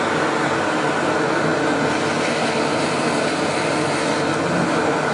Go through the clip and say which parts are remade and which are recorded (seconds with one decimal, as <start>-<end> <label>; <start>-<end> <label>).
0.0-5.1 recorded